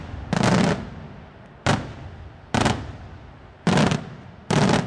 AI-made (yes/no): no